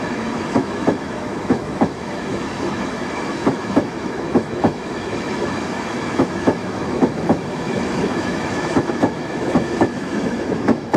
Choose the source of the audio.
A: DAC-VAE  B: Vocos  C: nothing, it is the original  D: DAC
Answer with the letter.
A